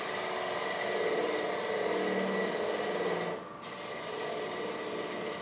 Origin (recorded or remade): recorded